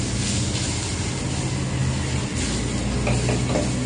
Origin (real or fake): real